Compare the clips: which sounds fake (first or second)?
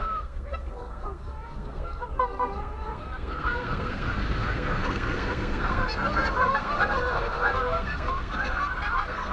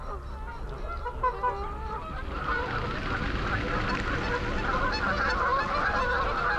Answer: first